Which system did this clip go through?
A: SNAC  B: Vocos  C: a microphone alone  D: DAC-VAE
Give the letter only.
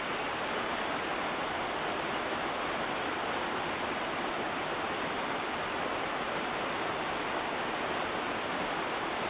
C